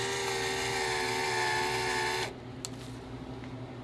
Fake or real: real